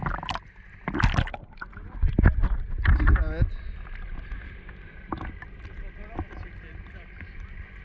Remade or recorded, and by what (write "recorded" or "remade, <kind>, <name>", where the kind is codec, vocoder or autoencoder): recorded